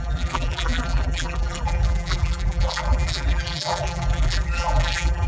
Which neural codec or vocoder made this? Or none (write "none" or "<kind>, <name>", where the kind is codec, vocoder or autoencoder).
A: vocoder, BigVGAN v2